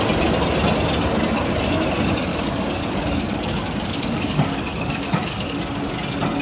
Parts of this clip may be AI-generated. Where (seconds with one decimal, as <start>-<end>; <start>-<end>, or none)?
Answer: 2.3-5.6